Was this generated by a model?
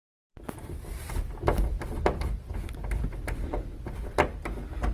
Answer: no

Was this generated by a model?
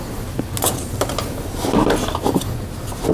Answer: no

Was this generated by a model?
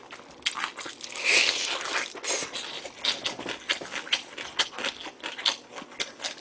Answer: no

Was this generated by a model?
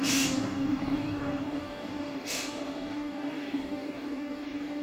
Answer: yes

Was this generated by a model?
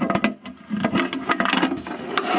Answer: no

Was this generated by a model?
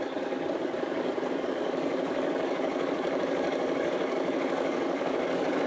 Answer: yes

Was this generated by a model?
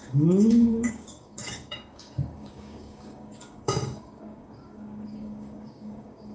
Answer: yes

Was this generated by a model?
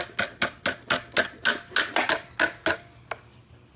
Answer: no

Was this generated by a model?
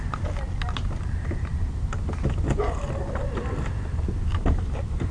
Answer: no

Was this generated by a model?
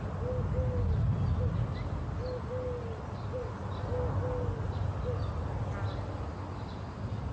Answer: no